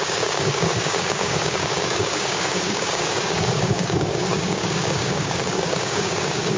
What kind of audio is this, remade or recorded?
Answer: remade